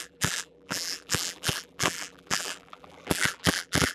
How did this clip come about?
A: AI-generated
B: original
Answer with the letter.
A